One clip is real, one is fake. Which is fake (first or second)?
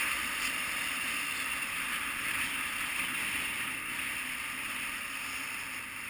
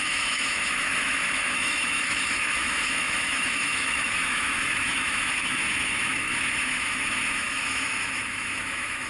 second